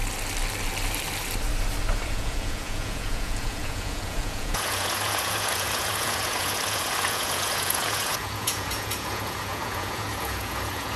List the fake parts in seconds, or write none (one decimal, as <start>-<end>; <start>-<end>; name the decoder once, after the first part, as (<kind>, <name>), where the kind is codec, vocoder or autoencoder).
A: 2.1-11.0 (vocoder, Vocos)